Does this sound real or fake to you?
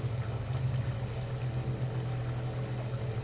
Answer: real